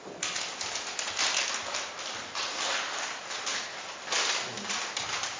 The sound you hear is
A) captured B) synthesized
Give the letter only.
A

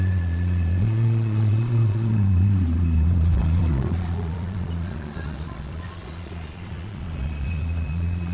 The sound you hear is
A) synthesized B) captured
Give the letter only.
A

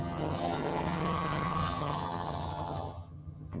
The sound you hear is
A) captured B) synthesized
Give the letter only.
B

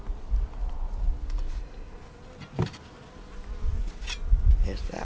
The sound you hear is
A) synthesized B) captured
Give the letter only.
B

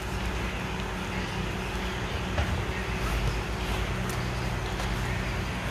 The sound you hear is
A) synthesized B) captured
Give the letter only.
B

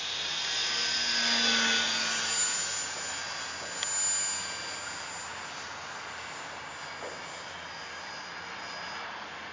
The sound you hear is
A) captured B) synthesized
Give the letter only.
A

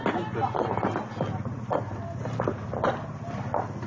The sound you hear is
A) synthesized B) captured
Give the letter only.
B